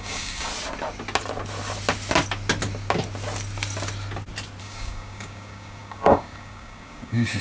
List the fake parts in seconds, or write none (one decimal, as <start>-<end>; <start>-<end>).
0.0-0.5; 4.6-7.4